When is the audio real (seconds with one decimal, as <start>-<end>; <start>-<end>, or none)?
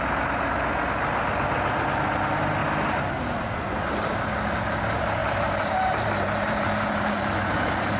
0.0-5.2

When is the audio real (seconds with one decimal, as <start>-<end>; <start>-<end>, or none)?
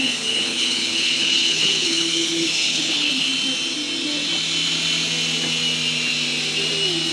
3.3-7.1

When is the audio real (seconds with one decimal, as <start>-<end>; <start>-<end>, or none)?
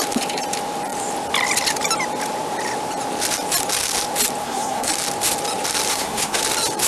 0.0-4.4; 4.9-5.9; 6.4-6.9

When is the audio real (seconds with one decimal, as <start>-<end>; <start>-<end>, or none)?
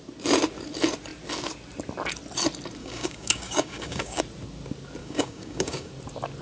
0.0-2.8; 4.2-5.0; 5.9-6.4